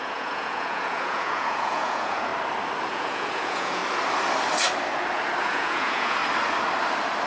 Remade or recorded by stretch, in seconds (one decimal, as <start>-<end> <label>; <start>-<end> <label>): 0.0-2.3 remade; 2.3-2.9 recorded; 2.9-3.8 remade; 3.8-5.4 recorded; 5.4-6.2 remade; 6.2-7.3 recorded